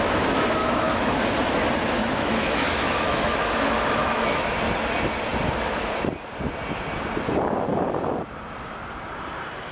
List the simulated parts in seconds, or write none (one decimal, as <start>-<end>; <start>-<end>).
0.6-1.1; 2.0-4.5